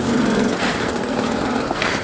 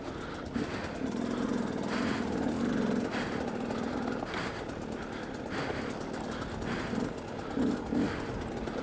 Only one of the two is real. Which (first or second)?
second